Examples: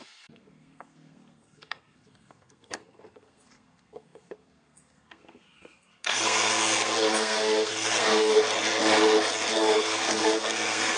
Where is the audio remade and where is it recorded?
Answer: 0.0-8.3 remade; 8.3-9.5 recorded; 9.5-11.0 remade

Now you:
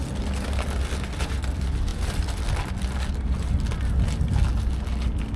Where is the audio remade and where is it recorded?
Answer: 0.0-5.4 recorded

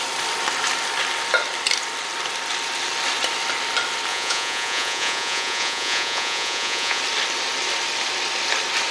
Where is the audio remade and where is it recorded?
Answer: 0.0-4.1 recorded; 4.1-7.0 remade; 7.0-8.9 recorded

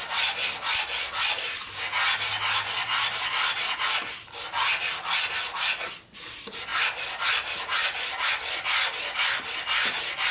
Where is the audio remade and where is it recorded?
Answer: 0.0-10.3 recorded

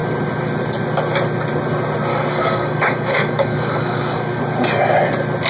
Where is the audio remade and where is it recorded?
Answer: 0.0-2.1 recorded; 2.1-4.4 remade; 4.4-5.5 recorded

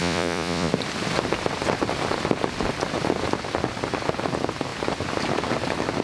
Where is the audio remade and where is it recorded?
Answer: 0.0-0.7 remade; 0.7-6.0 recorded

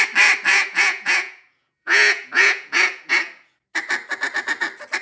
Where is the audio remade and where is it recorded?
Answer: 0.0-0.5 recorded; 0.5-3.5 remade; 3.5-5.0 recorded